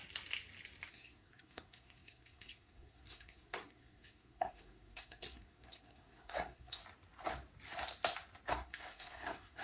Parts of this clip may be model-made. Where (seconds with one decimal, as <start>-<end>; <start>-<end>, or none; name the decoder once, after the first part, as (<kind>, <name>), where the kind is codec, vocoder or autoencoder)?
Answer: 0.9-6.8 (codec, SNAC); 8.5-9.6